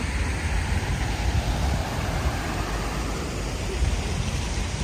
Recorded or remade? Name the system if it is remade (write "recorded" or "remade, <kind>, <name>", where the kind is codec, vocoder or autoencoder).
recorded